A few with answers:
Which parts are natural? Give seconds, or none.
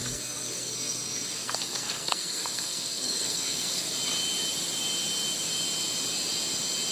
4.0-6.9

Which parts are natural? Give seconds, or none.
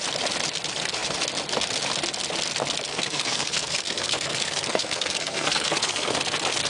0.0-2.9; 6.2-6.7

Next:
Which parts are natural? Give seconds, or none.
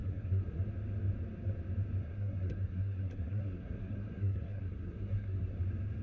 0.7-2.0; 5.6-6.0